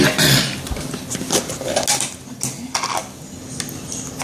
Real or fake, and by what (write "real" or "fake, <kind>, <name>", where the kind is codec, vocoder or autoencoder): real